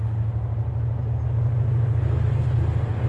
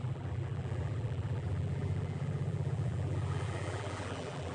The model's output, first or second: second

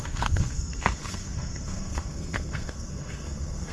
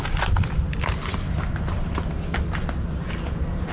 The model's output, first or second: first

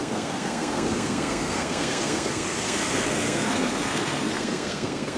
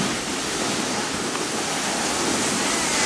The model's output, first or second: first